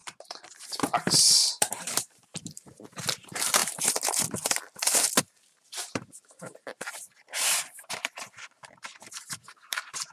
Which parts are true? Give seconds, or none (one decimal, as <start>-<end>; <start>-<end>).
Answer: none